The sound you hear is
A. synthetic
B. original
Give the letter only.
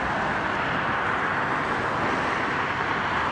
B